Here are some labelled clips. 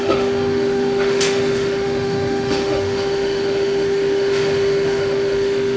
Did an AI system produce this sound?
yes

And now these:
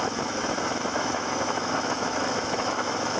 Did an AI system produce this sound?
yes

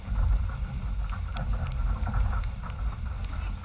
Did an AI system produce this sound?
no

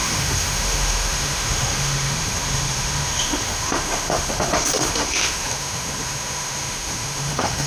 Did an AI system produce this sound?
yes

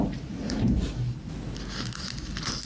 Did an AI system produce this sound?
no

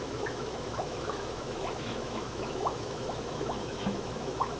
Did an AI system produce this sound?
yes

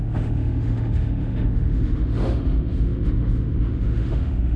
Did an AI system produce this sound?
yes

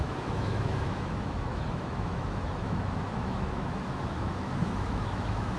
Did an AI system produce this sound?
yes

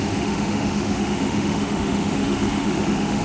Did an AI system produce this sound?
yes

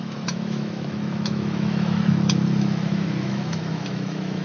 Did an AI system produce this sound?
yes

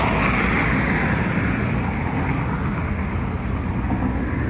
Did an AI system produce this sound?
no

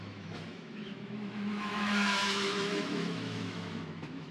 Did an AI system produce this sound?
yes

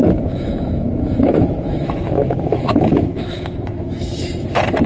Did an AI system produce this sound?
yes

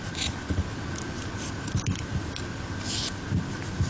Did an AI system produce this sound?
no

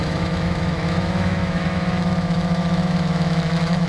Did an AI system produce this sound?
yes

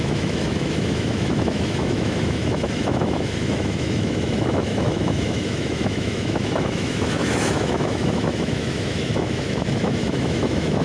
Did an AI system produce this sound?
yes